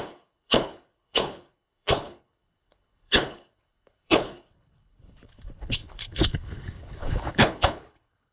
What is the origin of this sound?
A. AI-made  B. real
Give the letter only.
A